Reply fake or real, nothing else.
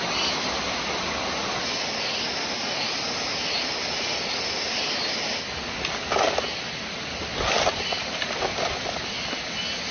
real